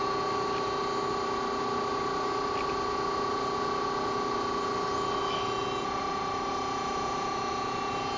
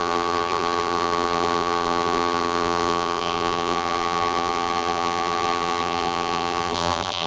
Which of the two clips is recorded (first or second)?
first